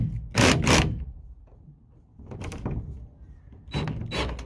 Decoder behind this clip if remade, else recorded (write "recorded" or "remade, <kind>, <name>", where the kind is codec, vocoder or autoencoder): recorded